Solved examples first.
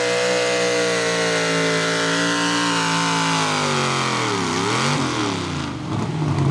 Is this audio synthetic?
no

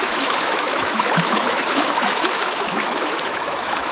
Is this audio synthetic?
yes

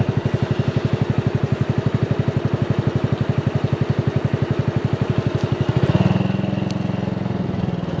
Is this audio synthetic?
no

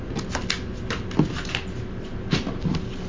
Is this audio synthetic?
no